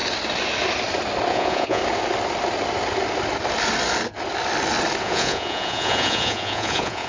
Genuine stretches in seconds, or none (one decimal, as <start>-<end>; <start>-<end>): 0.0-1.3; 1.8-5.0

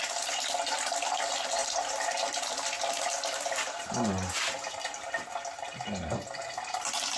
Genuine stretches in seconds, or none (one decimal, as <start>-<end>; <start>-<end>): 0.0-7.2

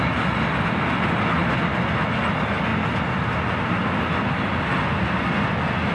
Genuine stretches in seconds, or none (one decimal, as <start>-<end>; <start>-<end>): 0.0-5.9

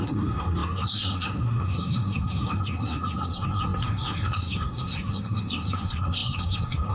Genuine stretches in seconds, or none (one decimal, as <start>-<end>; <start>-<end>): none

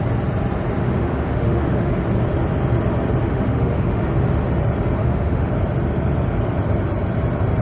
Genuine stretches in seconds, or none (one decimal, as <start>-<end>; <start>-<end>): 0.0-0.8; 1.9-3.3; 4.0-5.0; 5.5-7.6

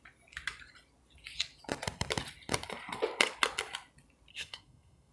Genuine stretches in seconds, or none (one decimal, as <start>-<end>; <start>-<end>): 0.0-4.3

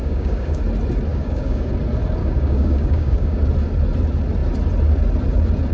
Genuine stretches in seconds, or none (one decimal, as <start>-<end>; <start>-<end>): 0.6-1.1; 1.7-2.2; 3.4-5.7